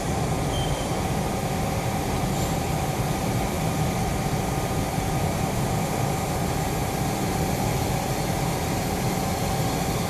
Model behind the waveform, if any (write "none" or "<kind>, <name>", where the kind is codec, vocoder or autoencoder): vocoder, BigVGAN v2